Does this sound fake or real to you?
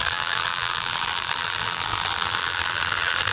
fake